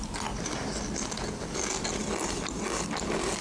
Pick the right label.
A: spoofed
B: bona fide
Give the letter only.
B